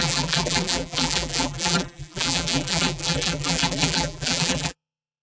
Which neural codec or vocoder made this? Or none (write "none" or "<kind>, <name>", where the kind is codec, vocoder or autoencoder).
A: vocoder, BigVGAN v2